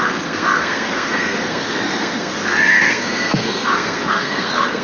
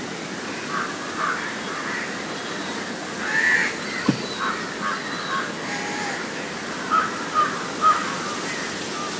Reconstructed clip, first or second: first